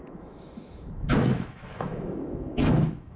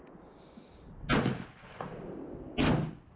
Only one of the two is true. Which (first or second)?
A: second